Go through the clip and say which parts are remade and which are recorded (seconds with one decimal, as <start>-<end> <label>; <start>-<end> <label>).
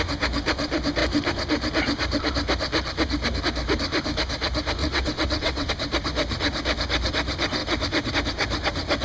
0.0-4.8 recorded; 4.8-5.7 remade; 5.7-9.0 recorded